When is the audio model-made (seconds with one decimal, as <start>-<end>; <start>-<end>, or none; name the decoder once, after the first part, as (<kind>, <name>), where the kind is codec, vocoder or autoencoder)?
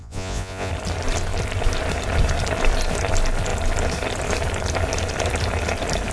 0.0-0.7 (vocoder, Vocos)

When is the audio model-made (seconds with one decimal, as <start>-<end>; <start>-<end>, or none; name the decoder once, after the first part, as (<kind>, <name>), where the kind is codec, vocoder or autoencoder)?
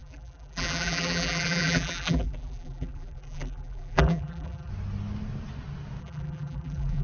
0.0-4.7 (vocoder, BigVGAN v2); 6.0-7.0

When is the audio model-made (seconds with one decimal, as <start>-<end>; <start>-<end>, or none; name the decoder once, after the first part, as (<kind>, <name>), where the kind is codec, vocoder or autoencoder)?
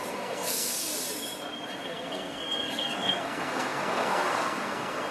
0.0-0.9 (codec, SNAC); 1.8-5.1